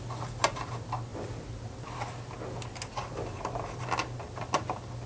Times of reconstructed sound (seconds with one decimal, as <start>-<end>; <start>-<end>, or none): none